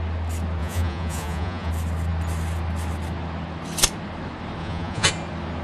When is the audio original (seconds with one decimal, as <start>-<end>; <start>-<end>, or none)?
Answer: 0.0-0.6; 1.7-4.6; 5.1-5.6